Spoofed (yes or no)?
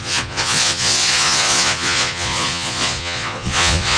yes